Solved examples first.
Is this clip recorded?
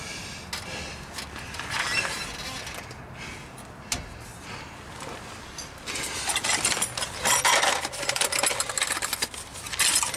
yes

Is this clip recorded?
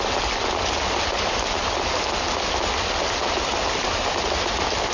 yes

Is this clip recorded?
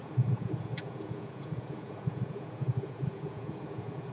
no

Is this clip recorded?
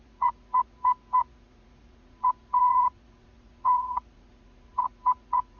no